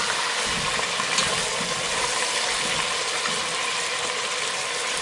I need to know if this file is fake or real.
real